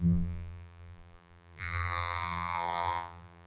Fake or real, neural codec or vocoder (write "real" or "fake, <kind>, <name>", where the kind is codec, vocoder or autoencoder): fake, vocoder, BigVGAN v2